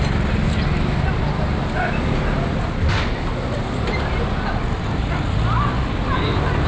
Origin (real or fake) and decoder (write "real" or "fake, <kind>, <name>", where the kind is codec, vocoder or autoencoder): real